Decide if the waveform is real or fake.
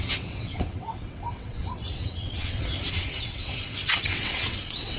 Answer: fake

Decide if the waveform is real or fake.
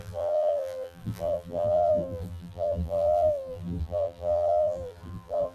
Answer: fake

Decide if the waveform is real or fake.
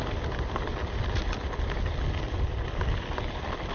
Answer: real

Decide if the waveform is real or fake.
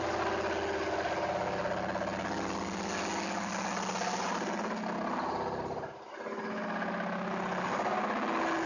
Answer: real